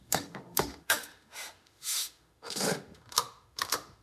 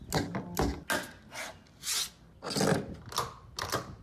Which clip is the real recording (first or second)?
second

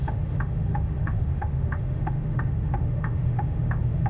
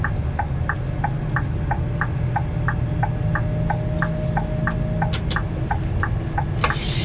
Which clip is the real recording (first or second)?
second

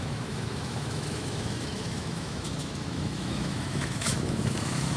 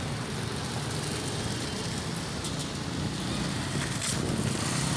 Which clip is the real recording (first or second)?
second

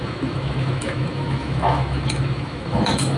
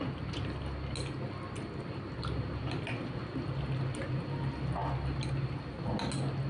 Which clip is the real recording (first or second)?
second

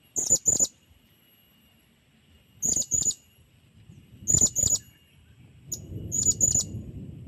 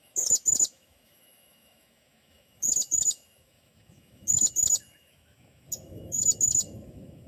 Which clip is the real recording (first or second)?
first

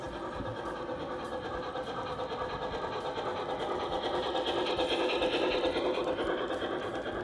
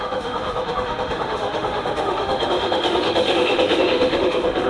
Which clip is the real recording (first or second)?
first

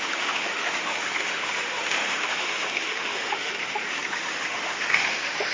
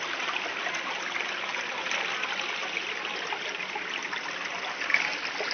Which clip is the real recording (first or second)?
second